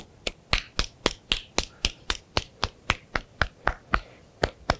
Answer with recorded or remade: recorded